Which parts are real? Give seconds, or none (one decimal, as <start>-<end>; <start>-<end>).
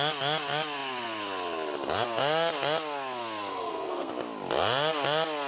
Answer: 0.0-3.5; 4.1-5.5